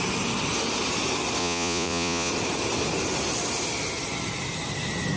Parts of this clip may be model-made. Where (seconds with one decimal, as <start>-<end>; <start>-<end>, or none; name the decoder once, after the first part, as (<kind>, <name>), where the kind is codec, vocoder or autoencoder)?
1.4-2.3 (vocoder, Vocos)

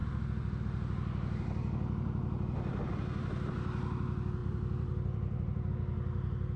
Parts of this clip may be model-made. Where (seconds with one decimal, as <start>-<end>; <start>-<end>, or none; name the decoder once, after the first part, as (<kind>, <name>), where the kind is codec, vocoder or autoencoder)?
0.0-0.6 (vocoder, BigVGAN v2); 4.4-5.7

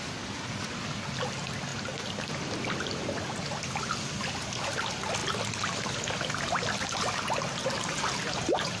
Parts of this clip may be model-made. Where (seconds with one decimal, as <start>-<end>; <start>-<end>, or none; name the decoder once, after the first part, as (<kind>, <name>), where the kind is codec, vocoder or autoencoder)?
none

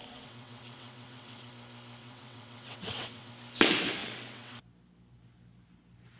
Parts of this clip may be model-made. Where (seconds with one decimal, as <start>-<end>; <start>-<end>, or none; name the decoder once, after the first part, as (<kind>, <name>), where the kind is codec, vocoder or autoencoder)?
0.0-1.5 (vocoder, WaveNeXt); 2.0-3.3; 4.0-4.6

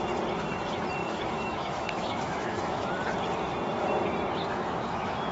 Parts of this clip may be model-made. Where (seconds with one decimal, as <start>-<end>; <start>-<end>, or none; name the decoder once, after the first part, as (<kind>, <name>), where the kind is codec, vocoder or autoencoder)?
1.0-2.9 (autoencoder, DAC-VAE); 4.5-5.3

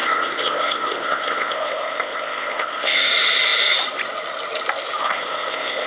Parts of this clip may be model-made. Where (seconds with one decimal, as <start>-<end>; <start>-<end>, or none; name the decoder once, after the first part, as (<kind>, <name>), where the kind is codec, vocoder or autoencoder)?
0.0-3.1 (codec, ZipCodec); 5.0-5.9

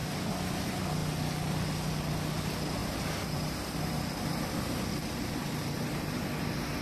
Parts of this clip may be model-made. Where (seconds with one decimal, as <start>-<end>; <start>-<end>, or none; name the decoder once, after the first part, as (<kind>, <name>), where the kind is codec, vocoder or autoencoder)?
2.8-6.2 (vocoder, BigVGAN v2)

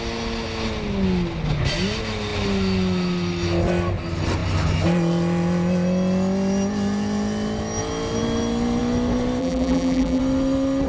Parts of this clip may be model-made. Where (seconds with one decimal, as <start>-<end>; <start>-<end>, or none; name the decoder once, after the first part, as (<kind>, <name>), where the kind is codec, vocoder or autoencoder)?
9.4-10.2 (vocoder, BigVGAN v2)